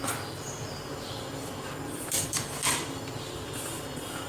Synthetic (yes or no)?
no